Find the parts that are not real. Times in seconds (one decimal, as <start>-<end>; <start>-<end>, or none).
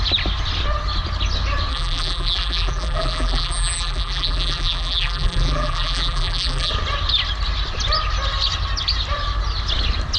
1.7-6.7